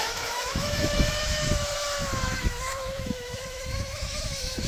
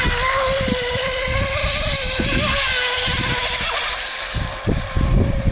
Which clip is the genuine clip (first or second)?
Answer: second